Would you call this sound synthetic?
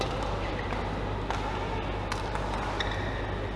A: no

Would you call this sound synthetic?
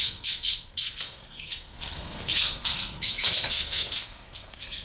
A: yes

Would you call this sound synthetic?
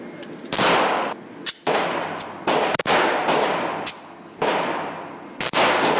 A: no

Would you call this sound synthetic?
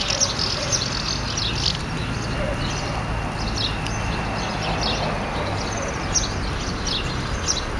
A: no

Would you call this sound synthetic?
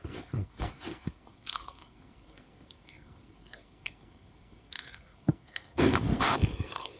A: yes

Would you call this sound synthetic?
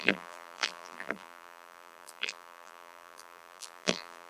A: yes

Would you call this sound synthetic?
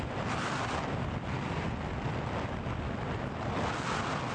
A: no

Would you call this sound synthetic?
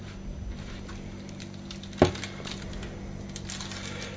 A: no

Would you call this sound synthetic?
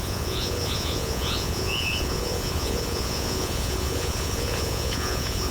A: yes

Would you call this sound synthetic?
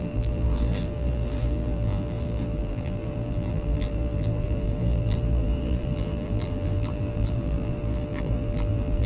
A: yes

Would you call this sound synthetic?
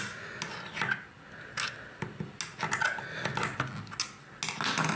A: no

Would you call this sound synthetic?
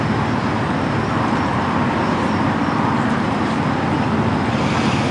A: no